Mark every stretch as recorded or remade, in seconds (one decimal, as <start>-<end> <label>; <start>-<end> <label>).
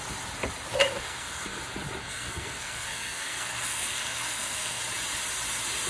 0.0-0.8 recorded; 0.8-1.6 remade; 1.6-2.0 recorded; 2.0-4.8 remade; 4.8-5.9 recorded